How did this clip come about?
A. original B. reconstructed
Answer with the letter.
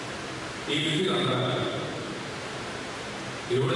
B